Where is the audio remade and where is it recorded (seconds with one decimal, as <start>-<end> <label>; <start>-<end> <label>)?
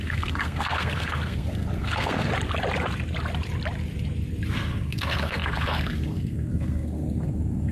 0.0-2.3 remade; 2.3-4.5 recorded; 4.5-7.7 remade